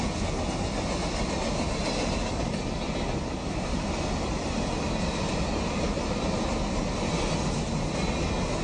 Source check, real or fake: real